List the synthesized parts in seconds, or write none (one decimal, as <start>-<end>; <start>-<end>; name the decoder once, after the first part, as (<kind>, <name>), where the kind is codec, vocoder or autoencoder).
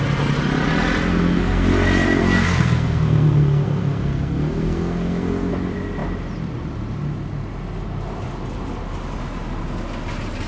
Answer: 1.1-1.7 (codec, SNAC); 2.2-5.5